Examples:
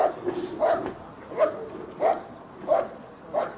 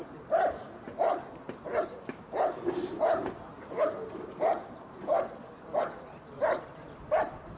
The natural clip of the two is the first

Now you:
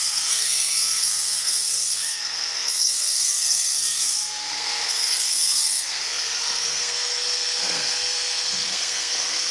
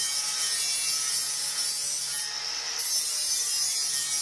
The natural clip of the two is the second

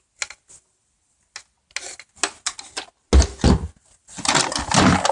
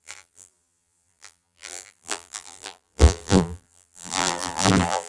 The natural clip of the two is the first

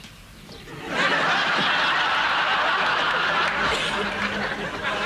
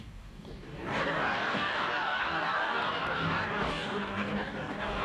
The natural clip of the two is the first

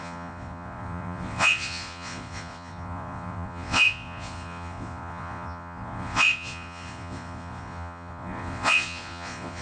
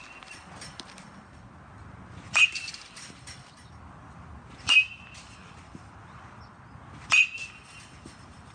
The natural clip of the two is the second